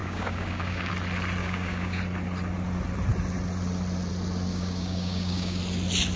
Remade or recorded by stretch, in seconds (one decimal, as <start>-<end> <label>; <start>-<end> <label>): 0.0-0.9 remade; 0.9-1.4 recorded; 1.4-2.0 remade; 2.0-4.5 recorded; 4.5-5.6 remade; 5.6-6.2 recorded